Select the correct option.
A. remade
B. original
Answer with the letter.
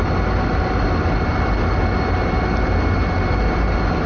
B